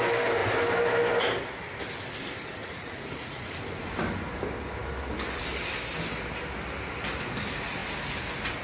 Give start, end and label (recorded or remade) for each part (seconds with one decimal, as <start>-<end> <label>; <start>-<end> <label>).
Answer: 0.0-2.6 recorded; 2.6-3.6 remade; 3.6-8.6 recorded